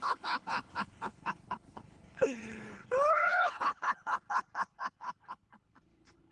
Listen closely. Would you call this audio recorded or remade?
remade